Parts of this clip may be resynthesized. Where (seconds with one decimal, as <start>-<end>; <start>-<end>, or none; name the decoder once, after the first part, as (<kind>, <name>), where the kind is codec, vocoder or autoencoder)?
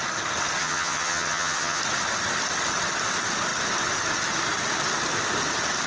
0.6-1.8 (vocoder, HiFi-GAN)